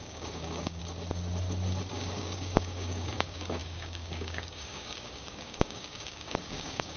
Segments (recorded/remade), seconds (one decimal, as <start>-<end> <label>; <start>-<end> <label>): 0.0-0.8 remade; 0.8-1.9 recorded; 1.9-7.0 remade